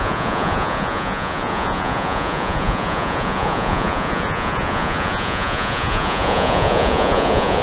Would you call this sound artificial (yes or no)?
yes